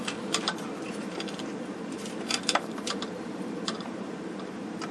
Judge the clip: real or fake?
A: fake